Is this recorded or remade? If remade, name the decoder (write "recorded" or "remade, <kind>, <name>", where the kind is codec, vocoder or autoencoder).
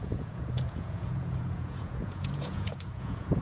remade, vocoder, Vocos